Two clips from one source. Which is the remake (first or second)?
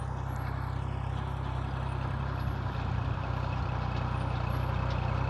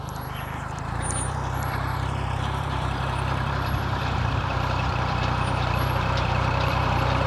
second